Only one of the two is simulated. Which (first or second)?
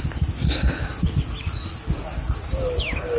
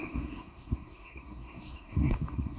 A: second